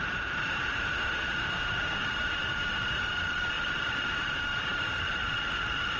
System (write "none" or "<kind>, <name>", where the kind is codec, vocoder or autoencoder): vocoder, BigVGAN v2